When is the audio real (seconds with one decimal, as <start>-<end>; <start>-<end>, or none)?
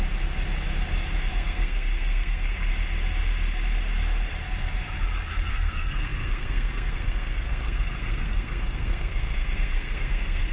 0.0-1.3; 2.7-5.5